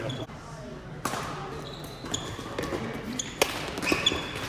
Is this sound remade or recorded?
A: recorded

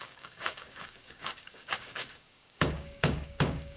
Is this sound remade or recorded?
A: remade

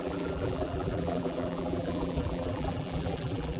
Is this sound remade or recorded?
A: remade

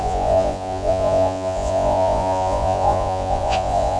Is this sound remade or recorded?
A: remade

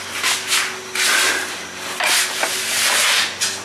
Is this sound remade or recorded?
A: recorded